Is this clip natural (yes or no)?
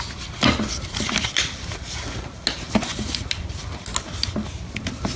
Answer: yes